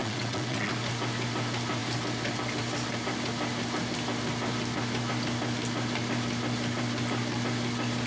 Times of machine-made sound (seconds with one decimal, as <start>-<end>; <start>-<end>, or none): 0.0-0.7